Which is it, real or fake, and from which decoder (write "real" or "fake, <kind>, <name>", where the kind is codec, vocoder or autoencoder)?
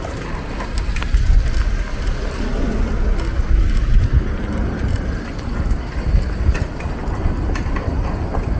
real